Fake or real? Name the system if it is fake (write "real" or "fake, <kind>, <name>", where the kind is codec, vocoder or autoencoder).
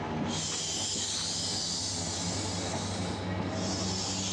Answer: real